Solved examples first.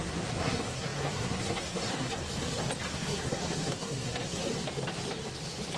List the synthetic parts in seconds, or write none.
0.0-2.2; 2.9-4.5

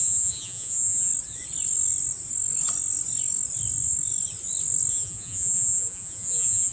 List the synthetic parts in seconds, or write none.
0.0-1.1; 4.9-6.7

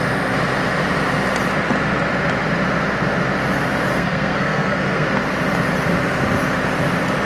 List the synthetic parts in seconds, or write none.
3.9-5.1

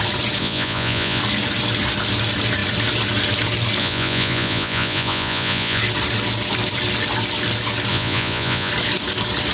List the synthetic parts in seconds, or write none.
0.4-1.2; 3.8-5.8; 7.9-8.7